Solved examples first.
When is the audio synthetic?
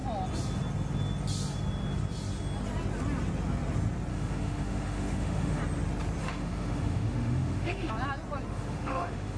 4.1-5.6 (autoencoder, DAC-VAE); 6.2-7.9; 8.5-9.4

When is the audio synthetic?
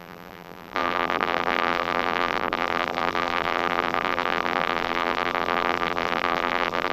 0.0-6.9 (vocoder, BigVGAN v2)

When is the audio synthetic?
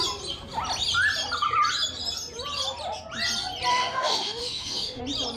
3.7-5.0 (autoencoder, DAC-VAE)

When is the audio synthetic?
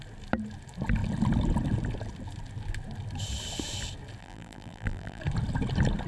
4.2-5.2 (vocoder, BigVGAN v2)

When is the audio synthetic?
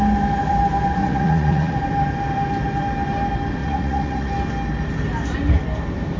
1.0-1.8 (vocoder, Vocos); 3.6-4.3